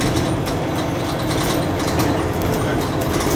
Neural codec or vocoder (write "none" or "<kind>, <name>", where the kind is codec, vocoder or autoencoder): none